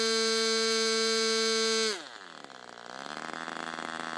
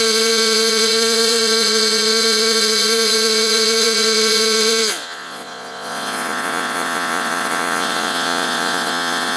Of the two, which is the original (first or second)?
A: first